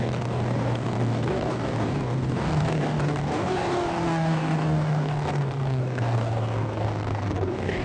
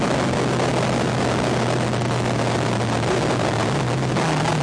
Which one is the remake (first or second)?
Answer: first